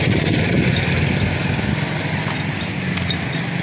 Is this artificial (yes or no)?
no